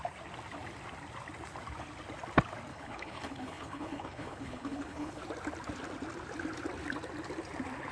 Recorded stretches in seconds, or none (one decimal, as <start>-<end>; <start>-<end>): 0.0-2.7; 5.2-7.9